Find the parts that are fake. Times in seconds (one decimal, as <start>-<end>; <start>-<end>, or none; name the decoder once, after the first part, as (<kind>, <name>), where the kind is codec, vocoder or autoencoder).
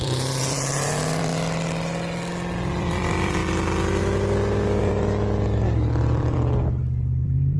0.0-1.3 (vocoder, BigVGAN v2); 2.8-3.4; 4.8-7.6